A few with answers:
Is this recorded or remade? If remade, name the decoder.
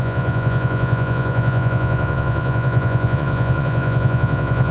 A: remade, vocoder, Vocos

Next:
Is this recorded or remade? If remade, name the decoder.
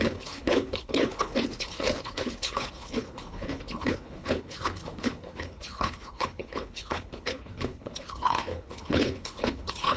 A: remade, codec, HILCodec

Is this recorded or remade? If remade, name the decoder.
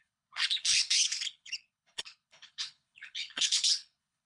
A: remade, codec, HILCodec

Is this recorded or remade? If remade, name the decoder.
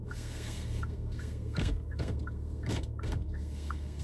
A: remade, codec, SNAC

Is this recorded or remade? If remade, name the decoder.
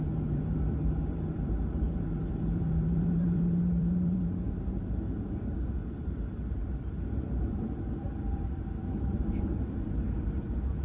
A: remade, vocoder, BigVGAN v2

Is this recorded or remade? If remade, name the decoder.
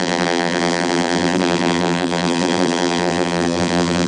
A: remade, vocoder, BigVGAN v2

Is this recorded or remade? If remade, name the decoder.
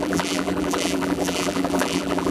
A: remade, vocoder, BigVGAN v2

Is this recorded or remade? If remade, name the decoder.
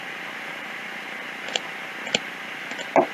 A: remade, vocoder, BigVGAN v2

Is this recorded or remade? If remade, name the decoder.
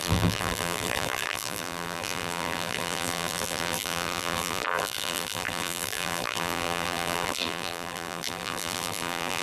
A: remade, vocoder, BigVGAN v2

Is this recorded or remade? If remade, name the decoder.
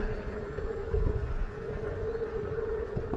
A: remade, vocoder, Vocos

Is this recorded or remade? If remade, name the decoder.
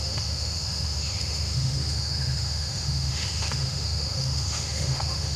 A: remade, autoencoder, DAC-VAE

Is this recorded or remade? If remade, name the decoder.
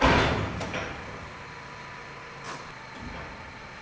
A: recorded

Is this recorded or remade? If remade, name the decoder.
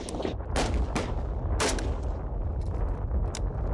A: recorded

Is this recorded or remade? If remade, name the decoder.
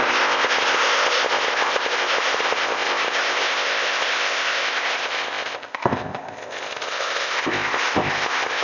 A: remade, codec, ZipCodec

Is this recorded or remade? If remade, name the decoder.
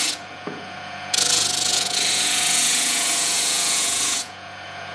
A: remade, vocoder, Vocos